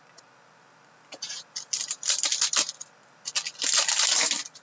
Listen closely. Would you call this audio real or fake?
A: real